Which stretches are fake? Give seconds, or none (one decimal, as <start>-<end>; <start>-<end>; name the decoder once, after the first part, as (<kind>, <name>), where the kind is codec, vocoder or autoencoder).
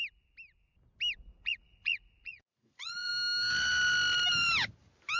1.3-3.1 (vocoder, Vocos)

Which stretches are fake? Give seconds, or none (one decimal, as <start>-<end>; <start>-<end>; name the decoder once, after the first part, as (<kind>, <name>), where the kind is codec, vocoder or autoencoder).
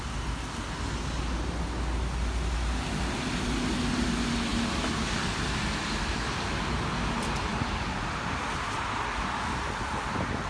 none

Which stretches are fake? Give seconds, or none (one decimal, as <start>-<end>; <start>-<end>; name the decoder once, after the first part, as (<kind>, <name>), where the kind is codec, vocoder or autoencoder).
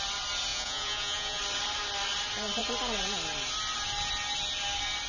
0.5-1.4 (vocoder, Vocos)